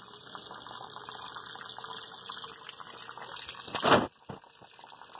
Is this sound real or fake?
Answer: real